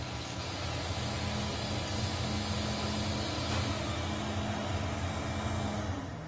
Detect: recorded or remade recorded